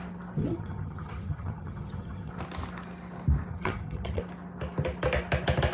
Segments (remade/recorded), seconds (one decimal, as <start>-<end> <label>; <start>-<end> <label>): 0.0-0.4 recorded; 0.4-2.3 remade; 2.3-3.5 recorded; 3.5-4.2 remade; 4.2-5.7 recorded